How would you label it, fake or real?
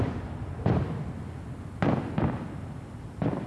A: real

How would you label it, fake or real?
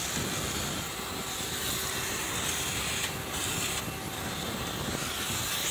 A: real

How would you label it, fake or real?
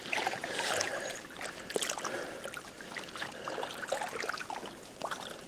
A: real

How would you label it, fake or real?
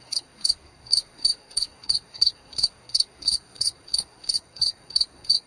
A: fake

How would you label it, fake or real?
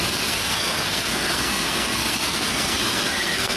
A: fake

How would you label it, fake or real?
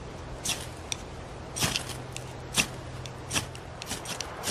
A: real